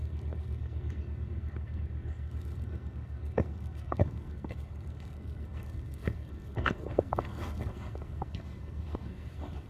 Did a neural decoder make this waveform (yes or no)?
yes